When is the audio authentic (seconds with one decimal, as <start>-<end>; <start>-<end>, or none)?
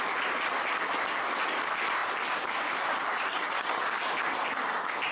0.0-3.3; 3.8-5.1